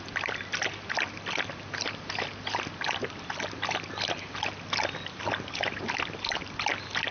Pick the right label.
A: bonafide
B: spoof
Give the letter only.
A